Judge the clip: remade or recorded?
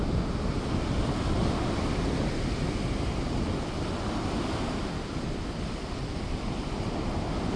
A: recorded